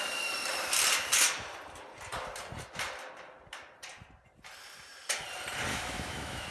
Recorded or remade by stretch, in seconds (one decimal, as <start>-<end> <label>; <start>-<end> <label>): 0.0-5.7 recorded; 5.7-6.5 remade